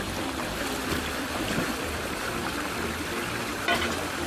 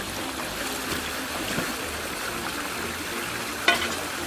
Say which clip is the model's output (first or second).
first